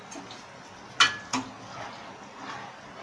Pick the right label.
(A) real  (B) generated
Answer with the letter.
A